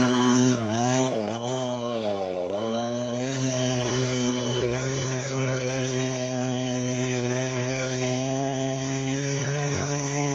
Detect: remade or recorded remade